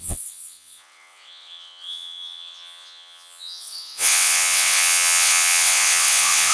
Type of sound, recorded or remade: remade